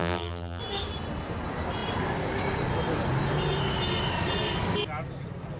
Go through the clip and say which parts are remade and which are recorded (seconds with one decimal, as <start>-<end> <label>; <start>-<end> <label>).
0.0-0.6 remade; 0.6-5.6 recorded